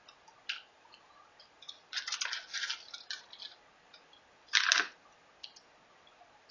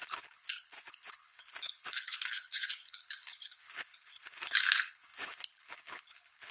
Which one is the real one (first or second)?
first